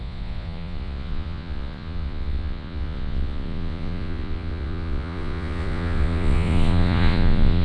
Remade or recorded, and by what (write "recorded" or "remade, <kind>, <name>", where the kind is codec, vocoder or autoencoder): remade, vocoder, Vocos